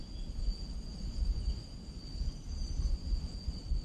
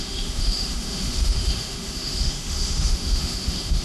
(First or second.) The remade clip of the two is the second